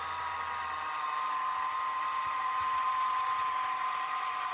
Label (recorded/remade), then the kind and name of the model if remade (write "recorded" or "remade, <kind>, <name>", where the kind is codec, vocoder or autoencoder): recorded